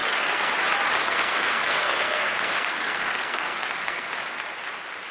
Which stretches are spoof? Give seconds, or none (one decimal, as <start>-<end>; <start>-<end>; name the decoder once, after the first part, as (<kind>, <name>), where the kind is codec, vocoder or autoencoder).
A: 0.0-0.5 (codec, SNAC); 1.0-4.1